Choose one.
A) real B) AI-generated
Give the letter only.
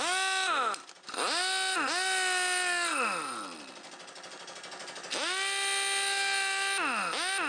A